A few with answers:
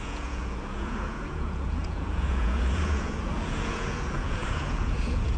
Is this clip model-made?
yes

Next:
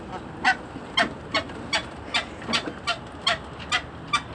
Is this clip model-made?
no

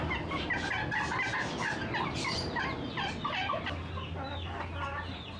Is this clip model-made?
no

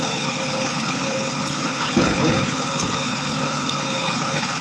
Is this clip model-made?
yes